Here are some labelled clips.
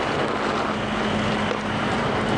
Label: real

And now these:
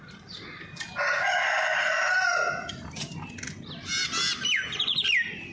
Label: real